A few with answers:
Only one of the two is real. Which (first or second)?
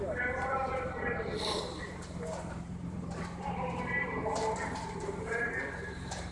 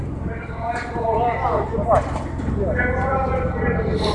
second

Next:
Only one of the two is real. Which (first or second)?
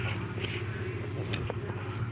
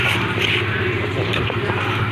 first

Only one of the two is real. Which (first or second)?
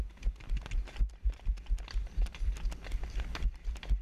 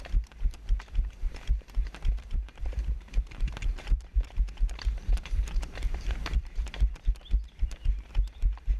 first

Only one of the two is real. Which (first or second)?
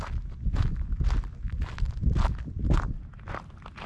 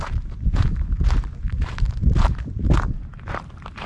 first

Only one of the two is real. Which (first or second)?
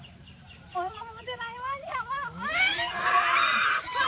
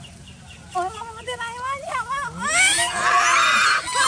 second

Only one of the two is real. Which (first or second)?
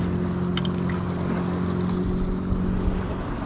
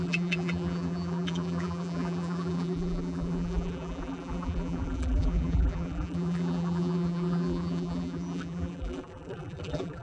first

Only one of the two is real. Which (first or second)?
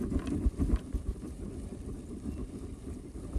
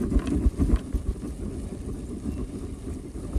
second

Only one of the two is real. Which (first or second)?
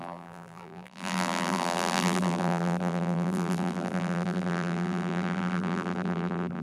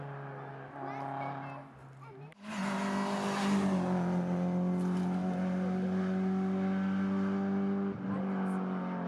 second